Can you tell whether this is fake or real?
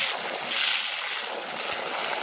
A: real